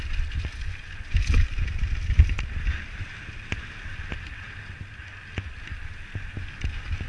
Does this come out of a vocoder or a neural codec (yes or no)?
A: no